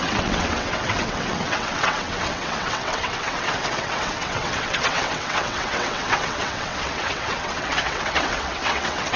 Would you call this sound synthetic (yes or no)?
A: yes